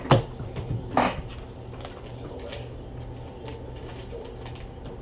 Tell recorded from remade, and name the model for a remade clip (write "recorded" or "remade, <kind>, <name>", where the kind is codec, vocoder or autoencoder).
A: recorded